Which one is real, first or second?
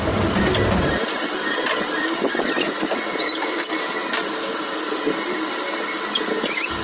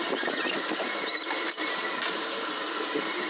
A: first